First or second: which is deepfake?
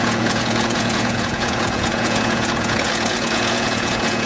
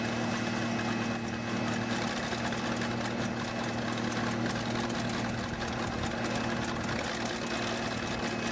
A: first